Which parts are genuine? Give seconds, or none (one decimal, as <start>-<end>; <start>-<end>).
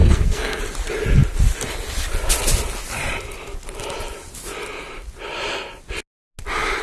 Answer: 0.6-6.8